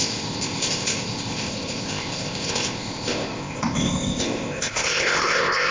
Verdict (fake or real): fake